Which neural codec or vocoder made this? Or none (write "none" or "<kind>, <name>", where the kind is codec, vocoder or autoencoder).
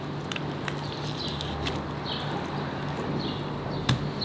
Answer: none